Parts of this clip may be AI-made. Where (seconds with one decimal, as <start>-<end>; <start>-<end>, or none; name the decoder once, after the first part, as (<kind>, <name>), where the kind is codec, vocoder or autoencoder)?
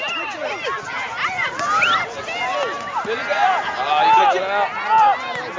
none